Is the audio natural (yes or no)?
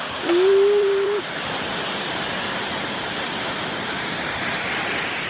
no